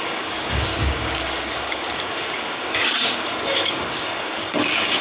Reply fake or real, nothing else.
fake